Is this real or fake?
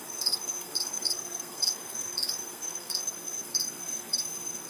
fake